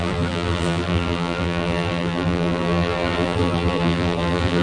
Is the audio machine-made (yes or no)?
yes